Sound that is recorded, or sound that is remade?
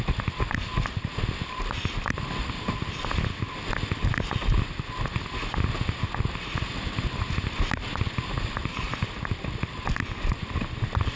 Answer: recorded